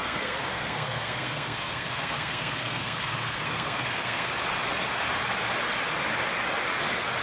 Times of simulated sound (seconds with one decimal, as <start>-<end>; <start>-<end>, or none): 0.0-4.3